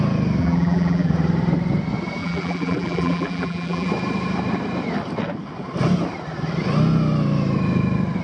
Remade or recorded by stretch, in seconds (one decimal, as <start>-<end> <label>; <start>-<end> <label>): 0.0-0.4 recorded; 0.4-1.1 remade; 1.1-2.2 recorded; 2.2-3.9 remade; 3.9-8.2 recorded

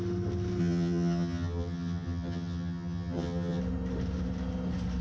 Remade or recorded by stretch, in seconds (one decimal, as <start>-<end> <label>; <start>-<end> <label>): 0.0-0.6 recorded; 0.6-3.6 remade; 3.6-5.0 recorded

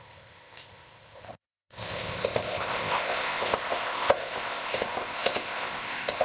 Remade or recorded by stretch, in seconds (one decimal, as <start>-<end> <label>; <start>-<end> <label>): 0.0-6.2 remade

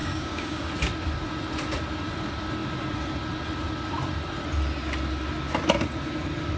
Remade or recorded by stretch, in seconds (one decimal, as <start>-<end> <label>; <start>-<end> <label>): 0.0-0.7 remade; 0.7-6.6 recorded

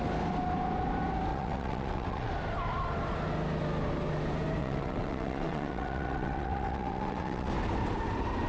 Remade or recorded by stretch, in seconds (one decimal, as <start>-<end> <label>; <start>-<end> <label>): 0.0-1.3 recorded; 1.3-2.3 remade; 2.3-4.6 recorded; 4.6-7.5 remade; 7.5-8.5 recorded

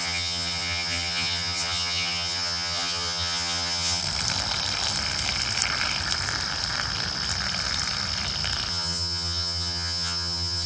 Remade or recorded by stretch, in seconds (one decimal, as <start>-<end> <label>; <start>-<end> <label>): 0.0-4.0 remade; 4.0-8.7 recorded; 8.7-10.7 remade

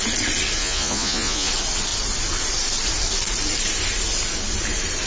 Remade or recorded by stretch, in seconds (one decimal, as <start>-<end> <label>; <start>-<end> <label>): 0.0-0.6 recorded; 0.6-1.5 remade; 1.5-5.1 recorded